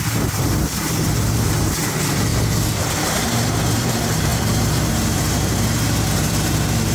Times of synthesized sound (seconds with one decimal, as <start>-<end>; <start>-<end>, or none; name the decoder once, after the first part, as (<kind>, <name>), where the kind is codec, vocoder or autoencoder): 0.0-2.3 (vocoder, BigVGAN v2); 3.3-6.9